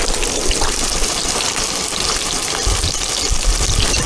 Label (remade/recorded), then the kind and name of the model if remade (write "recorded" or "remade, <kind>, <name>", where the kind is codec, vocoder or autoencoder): remade, vocoder, BigVGAN v2